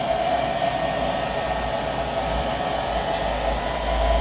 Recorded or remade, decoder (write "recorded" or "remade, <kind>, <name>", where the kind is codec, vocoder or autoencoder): recorded